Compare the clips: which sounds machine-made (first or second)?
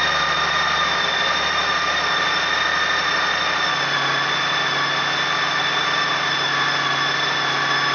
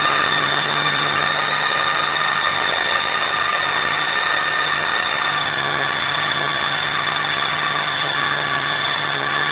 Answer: second